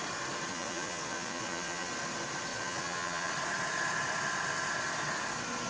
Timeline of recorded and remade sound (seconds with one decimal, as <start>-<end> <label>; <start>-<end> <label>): 0.0-0.5 recorded; 0.5-1.9 remade; 1.9-2.5 recorded; 2.5-3.3 remade; 3.3-5.7 recorded